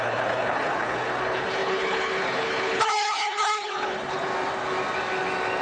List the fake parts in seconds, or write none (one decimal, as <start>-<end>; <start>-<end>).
0.0-4.3